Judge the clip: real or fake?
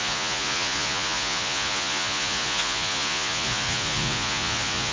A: fake